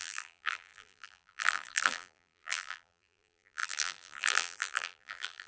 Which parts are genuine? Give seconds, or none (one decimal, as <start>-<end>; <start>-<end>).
none